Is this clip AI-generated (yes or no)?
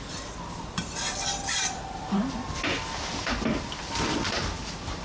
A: yes